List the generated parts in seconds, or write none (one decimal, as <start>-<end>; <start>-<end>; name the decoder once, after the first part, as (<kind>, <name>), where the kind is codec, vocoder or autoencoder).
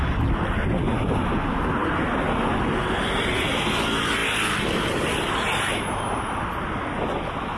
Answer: none